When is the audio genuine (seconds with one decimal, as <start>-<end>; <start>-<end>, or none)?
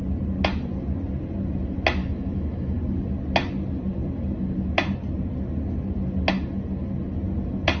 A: 0.0-2.0; 2.8-7.8